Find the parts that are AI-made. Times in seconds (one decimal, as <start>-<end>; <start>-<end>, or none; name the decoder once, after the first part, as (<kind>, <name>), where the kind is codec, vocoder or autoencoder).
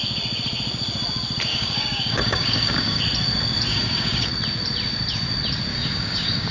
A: 1.5-3.0 (codec, DAC); 3.7-4.3; 5.7-6.5